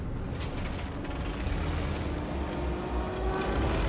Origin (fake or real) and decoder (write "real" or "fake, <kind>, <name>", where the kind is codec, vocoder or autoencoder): real